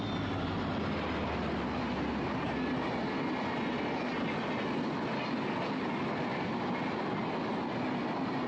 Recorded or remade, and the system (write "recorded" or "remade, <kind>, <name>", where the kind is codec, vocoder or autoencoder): recorded